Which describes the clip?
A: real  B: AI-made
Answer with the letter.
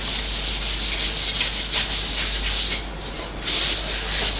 A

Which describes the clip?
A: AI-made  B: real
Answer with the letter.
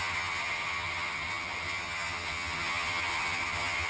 A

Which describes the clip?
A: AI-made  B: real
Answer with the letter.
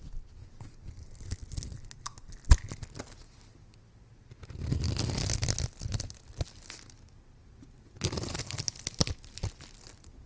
B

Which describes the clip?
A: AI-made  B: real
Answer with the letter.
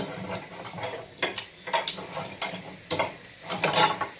B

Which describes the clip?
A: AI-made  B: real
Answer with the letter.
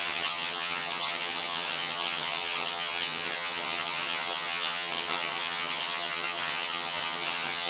A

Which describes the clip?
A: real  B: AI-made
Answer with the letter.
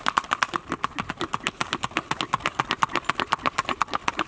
A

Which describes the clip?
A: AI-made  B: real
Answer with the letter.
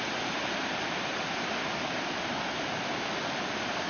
B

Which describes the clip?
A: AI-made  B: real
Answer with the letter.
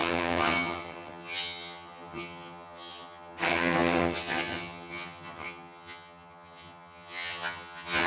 A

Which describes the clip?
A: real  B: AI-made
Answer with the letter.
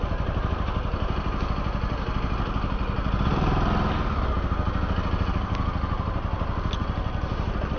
A